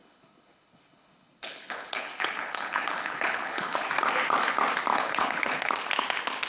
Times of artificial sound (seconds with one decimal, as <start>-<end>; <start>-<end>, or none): 0.0-3.9; 4.9-5.7